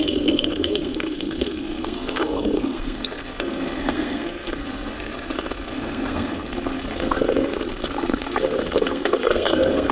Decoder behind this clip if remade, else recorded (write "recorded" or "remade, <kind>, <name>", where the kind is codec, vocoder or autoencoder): remade, codec, SNAC